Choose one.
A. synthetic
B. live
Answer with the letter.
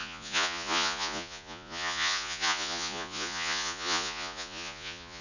A